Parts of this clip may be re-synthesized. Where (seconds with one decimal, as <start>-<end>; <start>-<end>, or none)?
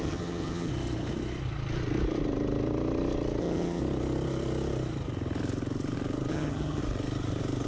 0.0-0.7; 3.4-3.8; 6.3-6.8